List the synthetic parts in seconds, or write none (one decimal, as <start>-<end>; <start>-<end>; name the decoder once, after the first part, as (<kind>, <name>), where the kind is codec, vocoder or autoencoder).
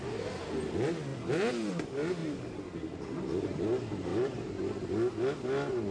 4.1-4.7 (vocoder, BigVGAN v2)